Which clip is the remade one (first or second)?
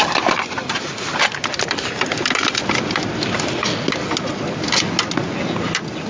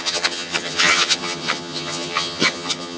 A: second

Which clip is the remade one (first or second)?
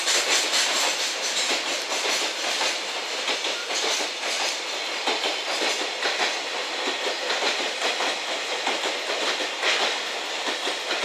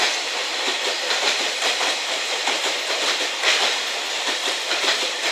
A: second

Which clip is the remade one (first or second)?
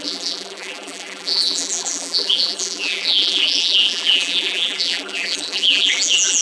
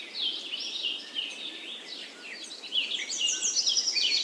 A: first